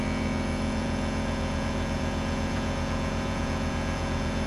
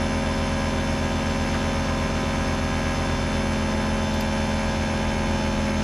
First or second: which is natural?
second